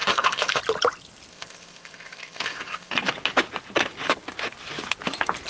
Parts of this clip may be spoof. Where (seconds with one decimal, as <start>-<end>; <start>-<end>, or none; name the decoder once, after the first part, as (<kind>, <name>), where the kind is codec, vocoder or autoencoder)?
0.0-0.6 (codec, ZipCodec); 1.3-2.9